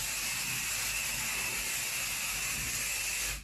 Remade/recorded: recorded